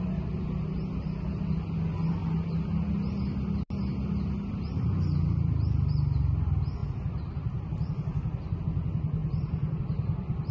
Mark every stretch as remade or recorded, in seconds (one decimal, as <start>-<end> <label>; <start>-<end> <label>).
0.0-10.5 recorded